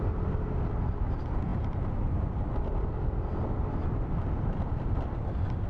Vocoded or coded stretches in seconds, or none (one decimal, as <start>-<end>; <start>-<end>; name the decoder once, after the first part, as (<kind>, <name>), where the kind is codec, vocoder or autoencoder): none